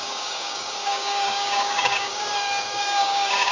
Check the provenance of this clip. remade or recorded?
remade